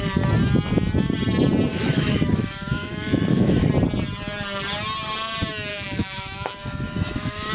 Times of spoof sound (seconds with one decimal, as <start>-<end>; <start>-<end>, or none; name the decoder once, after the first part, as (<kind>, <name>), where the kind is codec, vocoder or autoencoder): 1.7-3.7 (autoencoder, DAC-VAE); 5.7-7.5